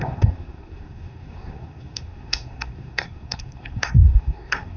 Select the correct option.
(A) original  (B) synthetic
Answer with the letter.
B